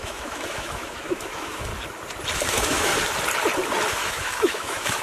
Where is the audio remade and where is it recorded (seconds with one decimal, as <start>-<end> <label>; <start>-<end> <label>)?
0.0-1.7 remade; 1.7-2.5 recorded; 2.5-2.9 remade; 2.9-3.9 recorded; 3.9-5.0 remade